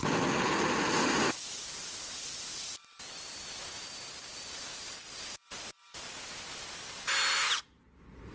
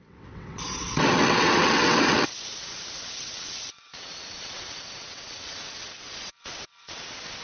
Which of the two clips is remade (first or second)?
second